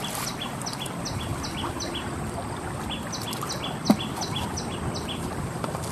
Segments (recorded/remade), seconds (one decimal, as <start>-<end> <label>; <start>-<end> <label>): 0.0-5.9 recorded